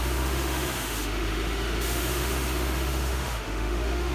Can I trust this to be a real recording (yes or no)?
no